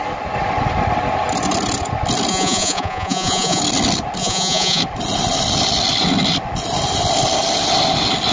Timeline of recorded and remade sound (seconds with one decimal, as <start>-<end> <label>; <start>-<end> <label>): 0.0-2.3 recorded; 2.3-3.6 remade; 3.6-4.2 recorded; 4.2-4.8 remade; 4.8-8.3 recorded